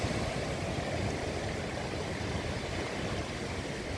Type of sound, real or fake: real